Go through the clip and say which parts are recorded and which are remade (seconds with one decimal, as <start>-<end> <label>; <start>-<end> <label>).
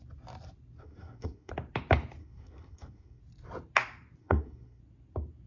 0.0-0.8 recorded; 0.8-1.5 remade; 1.5-2.2 recorded; 2.2-3.2 remade; 3.2-4.2 recorded; 4.2-4.8 remade; 4.8-5.5 recorded